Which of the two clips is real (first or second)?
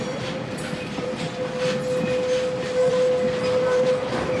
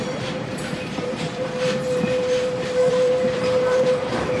first